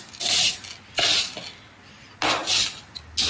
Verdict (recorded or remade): recorded